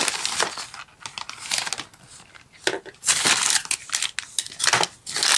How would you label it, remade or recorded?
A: recorded